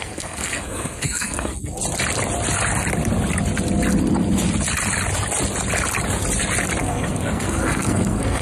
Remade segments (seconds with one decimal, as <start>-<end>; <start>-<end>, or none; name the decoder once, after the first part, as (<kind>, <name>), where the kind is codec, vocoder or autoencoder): 0.0-1.8 (codec, SNAC); 6.8-8.4